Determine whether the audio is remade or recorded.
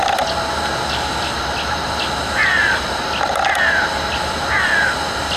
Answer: recorded